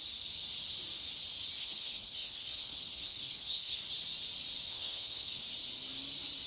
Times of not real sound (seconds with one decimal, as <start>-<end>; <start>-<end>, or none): 1.6-3.8; 4.7-5.4